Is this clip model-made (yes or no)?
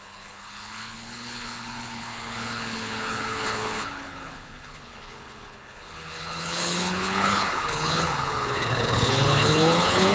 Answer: yes